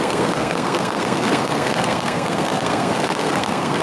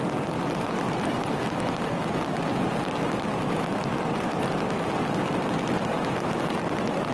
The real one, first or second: second